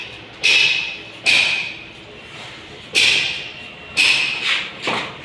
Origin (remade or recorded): recorded